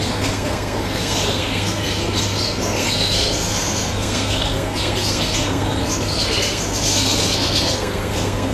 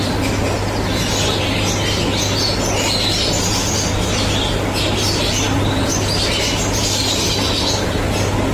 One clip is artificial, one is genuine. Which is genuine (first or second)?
second